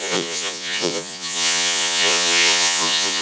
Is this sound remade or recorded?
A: remade